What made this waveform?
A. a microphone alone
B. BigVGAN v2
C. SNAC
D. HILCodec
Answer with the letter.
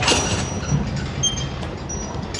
A